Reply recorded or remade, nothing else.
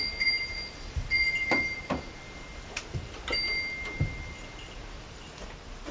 recorded